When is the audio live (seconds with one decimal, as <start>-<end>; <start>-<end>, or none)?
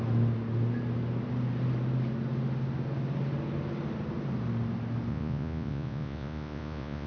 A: 0.0-5.1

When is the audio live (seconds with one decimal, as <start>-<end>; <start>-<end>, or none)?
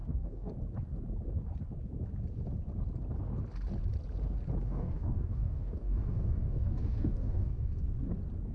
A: 0.5-4.6; 7.8-8.5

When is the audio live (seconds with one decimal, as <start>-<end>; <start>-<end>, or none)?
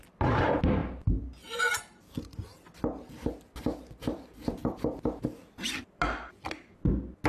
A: 0.0-7.3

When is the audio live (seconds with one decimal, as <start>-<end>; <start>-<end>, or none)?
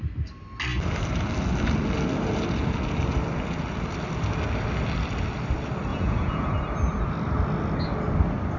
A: 0.0-5.9; 6.5-8.6